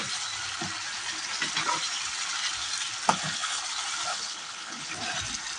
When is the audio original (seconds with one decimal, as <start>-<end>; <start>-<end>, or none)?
0.0-3.1; 3.6-4.1; 4.9-5.6